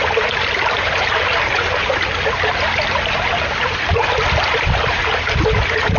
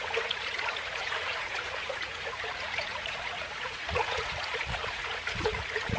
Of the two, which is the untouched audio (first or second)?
first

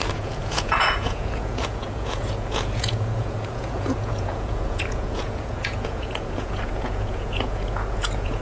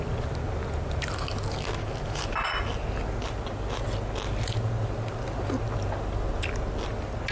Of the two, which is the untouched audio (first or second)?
second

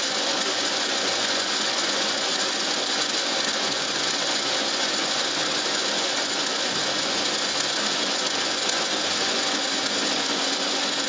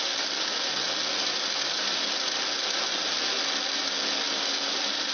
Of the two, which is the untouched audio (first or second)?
second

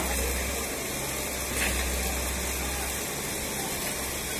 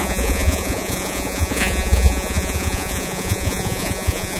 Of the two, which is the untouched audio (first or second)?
first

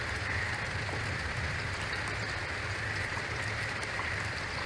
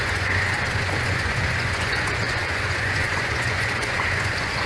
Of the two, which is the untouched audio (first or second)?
first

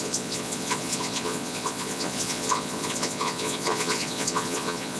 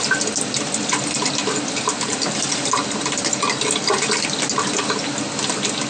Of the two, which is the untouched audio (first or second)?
second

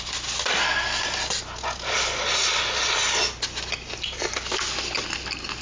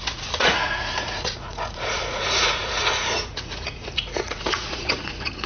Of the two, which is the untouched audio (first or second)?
first